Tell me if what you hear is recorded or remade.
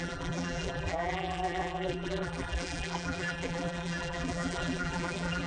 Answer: remade